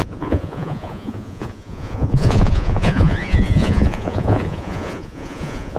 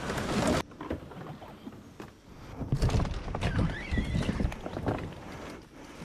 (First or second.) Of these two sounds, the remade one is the first